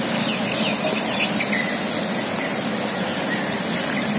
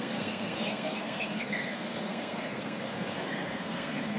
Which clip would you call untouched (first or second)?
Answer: first